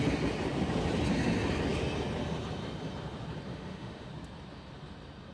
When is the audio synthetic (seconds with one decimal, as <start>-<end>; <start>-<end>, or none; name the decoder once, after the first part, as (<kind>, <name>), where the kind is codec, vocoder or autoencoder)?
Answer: 3.5-4.1 (autoencoder, DAC-VAE)